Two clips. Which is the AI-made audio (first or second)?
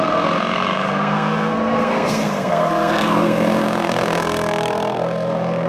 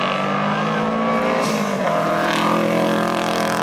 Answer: first